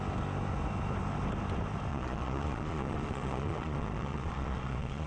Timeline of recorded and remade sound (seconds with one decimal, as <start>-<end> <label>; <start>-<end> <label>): 0.0-1.9 recorded; 1.9-5.1 remade